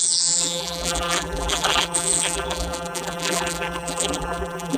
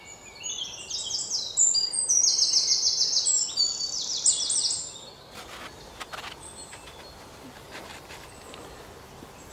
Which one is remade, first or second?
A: first